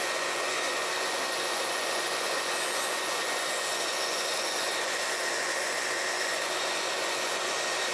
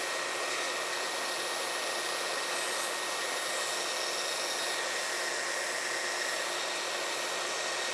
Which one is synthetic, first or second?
first